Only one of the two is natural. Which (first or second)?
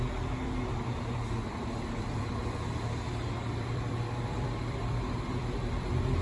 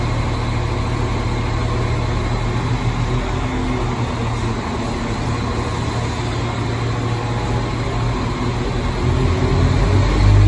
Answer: second